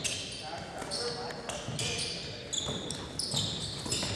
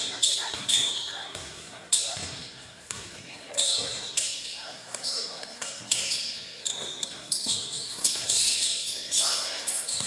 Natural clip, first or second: first